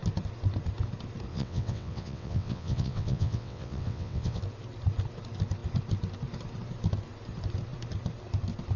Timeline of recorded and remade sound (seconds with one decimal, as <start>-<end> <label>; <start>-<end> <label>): 0.0-1.3 recorded; 1.3-4.4 remade; 4.4-8.8 recorded